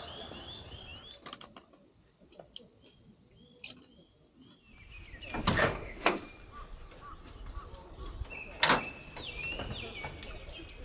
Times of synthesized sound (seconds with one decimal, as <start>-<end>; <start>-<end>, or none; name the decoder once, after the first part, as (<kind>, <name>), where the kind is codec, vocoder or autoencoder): 5.6-6.2 (autoencoder, DAC-VAE)